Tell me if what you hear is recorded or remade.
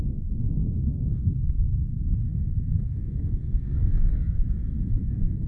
remade